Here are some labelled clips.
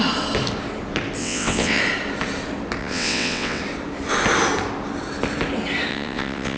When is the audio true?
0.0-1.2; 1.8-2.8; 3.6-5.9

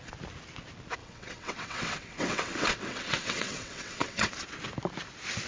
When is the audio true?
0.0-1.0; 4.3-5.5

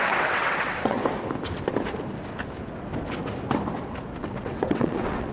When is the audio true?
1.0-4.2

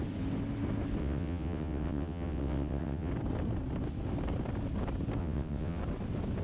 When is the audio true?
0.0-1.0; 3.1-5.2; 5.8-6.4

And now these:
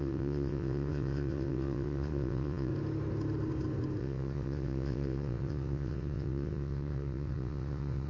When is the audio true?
2.7-4.0

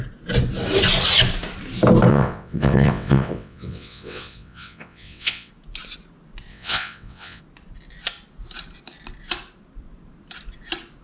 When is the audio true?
0.0-2.1; 5.5-6.5; 7.4-11.0